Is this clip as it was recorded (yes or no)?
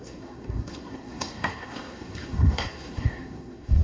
no